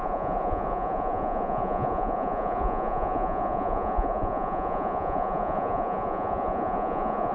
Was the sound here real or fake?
fake